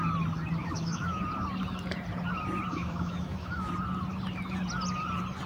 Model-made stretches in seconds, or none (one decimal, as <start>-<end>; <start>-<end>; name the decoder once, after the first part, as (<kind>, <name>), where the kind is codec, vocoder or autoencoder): 0.6-1.2 (autoencoder, DAC-VAE); 2.7-3.7